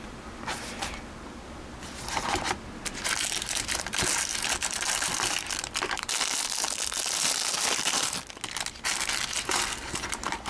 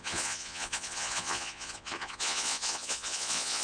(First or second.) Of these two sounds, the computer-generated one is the second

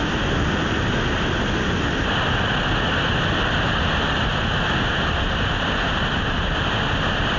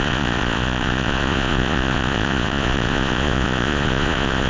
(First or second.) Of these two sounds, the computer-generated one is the second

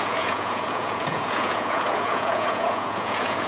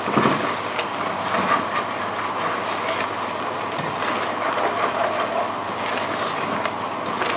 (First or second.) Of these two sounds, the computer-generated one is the first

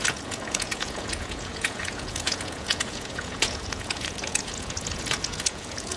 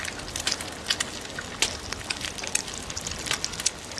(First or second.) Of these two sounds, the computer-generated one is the first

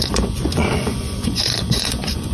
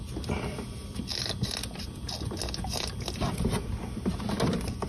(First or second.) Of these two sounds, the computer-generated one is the first